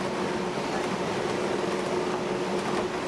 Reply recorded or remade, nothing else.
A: recorded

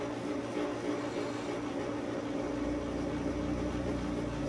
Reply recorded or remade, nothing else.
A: recorded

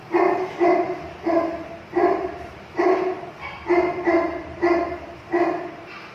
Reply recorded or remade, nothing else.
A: recorded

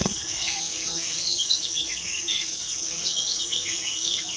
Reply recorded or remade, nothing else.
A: remade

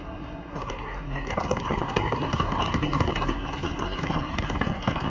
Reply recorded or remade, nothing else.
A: remade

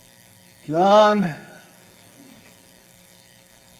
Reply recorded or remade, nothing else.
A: remade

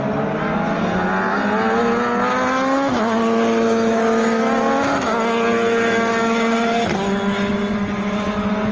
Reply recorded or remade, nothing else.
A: recorded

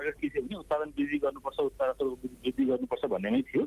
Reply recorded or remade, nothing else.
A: recorded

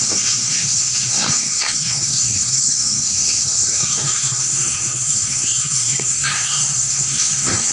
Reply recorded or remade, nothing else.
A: remade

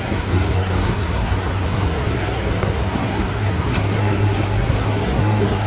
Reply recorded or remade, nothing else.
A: remade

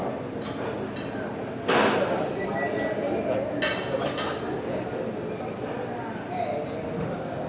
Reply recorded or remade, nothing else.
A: recorded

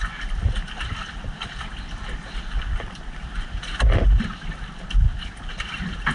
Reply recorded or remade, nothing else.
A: recorded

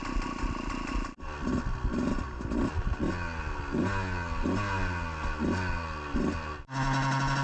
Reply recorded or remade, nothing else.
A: recorded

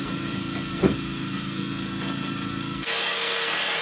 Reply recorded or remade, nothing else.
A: remade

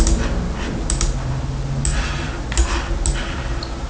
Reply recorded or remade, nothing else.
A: recorded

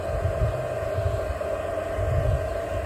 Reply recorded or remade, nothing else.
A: recorded